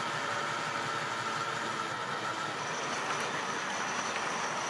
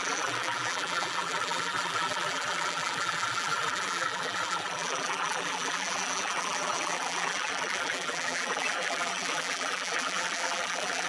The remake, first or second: second